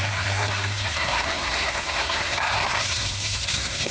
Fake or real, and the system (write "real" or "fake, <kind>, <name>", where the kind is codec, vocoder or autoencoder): fake, codec, SNAC